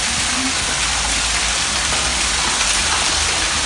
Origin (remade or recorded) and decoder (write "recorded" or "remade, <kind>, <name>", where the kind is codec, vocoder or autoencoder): recorded